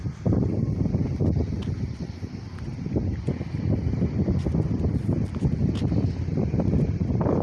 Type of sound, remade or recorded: recorded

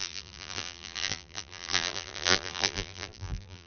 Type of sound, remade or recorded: remade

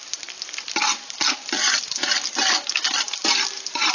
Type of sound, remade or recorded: recorded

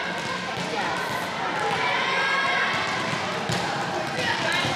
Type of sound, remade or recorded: recorded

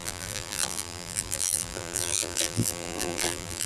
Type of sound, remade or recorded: remade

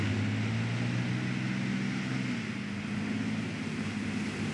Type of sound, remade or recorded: recorded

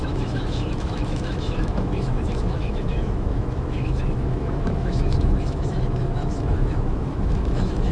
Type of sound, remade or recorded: remade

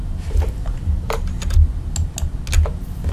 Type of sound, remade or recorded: recorded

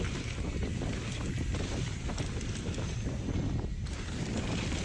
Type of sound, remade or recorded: recorded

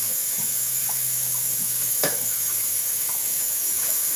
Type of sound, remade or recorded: remade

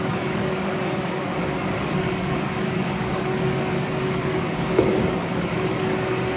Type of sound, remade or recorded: remade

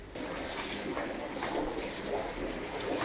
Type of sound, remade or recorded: recorded